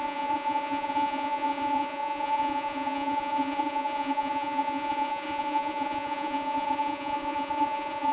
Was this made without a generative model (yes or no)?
no